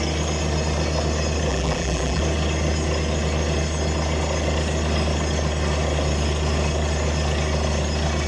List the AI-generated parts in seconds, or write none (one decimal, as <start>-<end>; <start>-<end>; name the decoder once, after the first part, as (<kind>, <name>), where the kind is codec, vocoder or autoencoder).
1.5-2.2 (vocoder, BigVGAN v2)